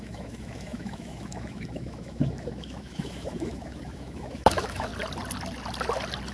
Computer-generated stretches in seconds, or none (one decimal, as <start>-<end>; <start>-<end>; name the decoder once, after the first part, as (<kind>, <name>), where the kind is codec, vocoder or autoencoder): 0.0-4.9 (autoencoder, DAC-VAE)

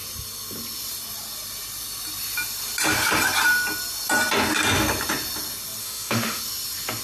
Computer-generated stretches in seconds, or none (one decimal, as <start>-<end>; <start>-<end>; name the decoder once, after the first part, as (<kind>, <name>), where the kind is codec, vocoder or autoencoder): 5.8-6.4 (autoencoder, DAC-VAE)

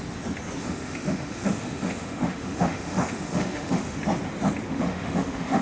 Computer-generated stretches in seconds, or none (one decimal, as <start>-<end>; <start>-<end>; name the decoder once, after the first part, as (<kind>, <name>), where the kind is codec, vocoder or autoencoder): 0.6-4.0 (autoencoder, DAC-VAE); 4.7-5.6

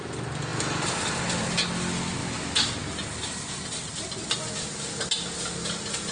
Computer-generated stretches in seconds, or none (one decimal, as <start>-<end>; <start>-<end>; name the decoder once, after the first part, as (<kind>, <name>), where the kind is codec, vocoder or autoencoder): 2.2-2.7 (autoencoder, DAC-VAE)

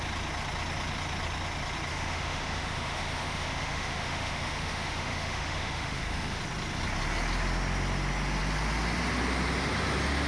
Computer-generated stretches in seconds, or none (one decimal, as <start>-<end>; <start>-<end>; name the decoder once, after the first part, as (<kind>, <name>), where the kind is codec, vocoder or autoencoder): 1.9-6.4 (autoencoder, DAC-VAE)

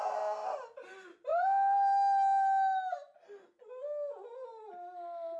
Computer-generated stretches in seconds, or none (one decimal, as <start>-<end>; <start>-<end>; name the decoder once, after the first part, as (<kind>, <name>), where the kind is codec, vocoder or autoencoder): none

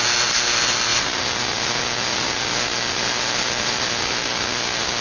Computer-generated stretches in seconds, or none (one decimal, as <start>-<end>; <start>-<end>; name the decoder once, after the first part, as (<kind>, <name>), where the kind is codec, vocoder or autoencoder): none